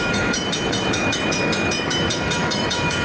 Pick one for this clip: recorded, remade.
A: remade